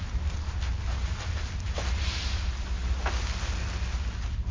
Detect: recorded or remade recorded